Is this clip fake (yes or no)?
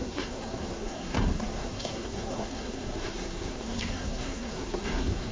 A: yes